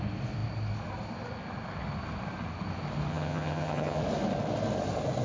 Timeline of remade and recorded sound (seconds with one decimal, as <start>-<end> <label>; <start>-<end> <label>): 0.0-3.1 recorded; 3.1-4.0 remade; 4.0-5.2 recorded